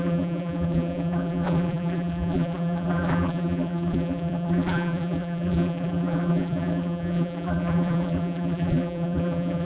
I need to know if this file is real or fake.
fake